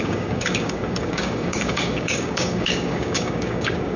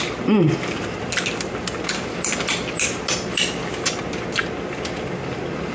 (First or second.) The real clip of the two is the second